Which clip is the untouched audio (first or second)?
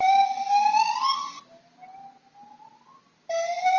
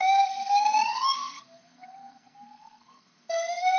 first